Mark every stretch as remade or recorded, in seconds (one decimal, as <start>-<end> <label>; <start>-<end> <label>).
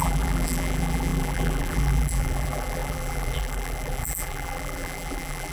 0.0-5.5 remade